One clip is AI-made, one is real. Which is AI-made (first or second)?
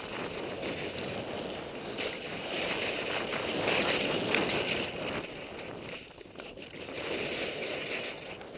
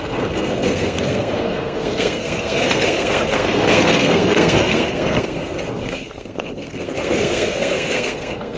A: second